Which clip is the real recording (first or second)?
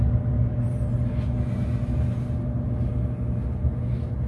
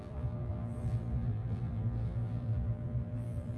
first